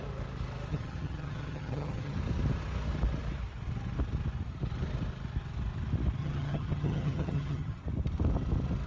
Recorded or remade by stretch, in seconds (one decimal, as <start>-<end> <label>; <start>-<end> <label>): 0.0-0.7 recorded; 0.7-2.2 remade; 2.2-6.2 recorded; 6.2-7.8 remade; 7.8-8.9 recorded